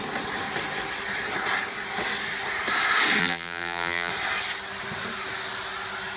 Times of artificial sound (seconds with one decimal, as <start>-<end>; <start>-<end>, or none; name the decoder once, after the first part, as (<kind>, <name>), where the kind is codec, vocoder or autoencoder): 3.2-4.1 (vocoder, BigVGAN v2)